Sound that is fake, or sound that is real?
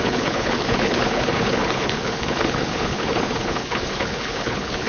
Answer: fake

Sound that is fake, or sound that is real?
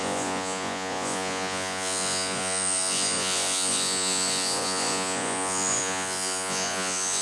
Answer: fake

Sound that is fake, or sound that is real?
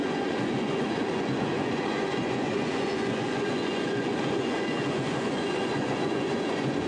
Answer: fake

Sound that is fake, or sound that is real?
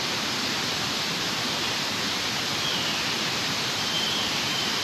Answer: fake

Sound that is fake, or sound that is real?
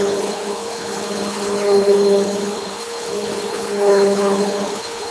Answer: fake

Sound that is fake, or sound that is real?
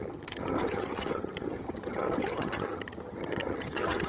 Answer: fake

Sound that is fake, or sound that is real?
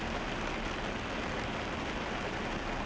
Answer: real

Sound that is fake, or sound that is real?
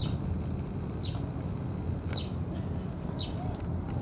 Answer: real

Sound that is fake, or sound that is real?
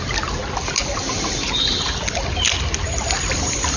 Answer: real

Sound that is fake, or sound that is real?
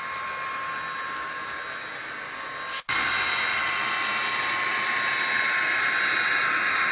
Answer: real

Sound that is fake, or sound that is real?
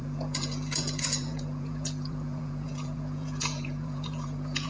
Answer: fake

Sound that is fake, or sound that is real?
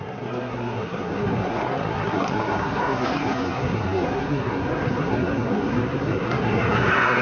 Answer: fake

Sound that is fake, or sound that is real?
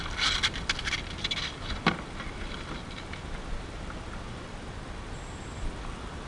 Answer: real